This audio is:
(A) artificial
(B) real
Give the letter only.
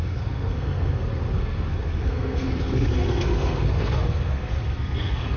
A